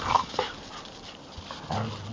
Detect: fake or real real